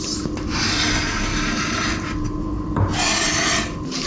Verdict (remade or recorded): recorded